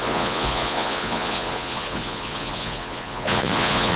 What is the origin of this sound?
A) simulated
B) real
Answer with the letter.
A